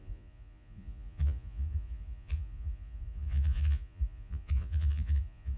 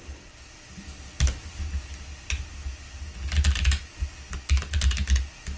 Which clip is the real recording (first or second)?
second